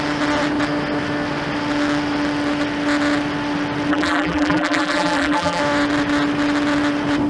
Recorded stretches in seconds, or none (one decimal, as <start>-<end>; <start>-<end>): 0.0-3.9; 5.6-7.3